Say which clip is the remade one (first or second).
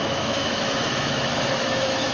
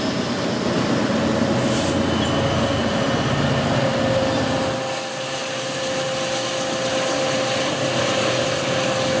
first